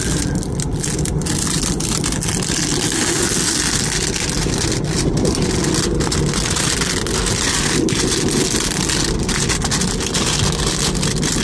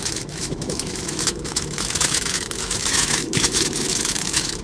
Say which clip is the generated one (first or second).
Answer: second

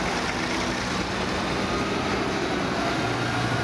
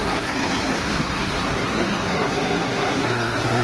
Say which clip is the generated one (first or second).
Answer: second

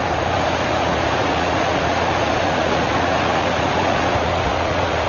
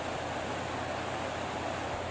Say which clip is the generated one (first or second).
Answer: first